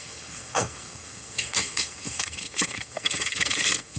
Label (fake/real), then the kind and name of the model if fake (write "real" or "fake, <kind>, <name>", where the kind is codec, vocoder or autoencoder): fake, codec, SNAC